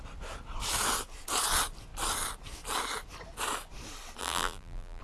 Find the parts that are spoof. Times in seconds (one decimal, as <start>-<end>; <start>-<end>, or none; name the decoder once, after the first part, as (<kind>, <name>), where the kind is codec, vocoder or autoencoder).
4.2-5.0 (vocoder, BigVGAN v2)